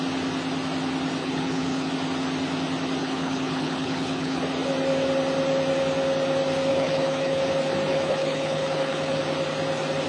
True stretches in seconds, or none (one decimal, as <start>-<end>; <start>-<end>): 0.0-1.2; 1.9-3.0; 4.4-6.7; 7.4-7.9; 9.2-10.1